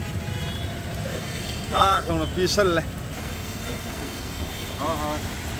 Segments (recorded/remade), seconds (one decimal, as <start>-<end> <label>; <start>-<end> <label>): 0.0-1.1 recorded; 1.1-2.1 remade; 2.1-3.2 recorded; 3.2-4.8 remade; 4.8-5.6 recorded